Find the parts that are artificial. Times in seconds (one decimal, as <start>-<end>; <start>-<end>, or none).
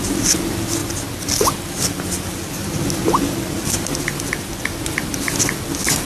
none